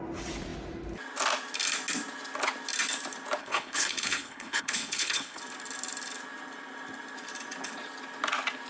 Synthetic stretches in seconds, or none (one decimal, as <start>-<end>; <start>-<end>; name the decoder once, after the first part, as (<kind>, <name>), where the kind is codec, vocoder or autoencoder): 3.4-5.4 (codec, HILCodec)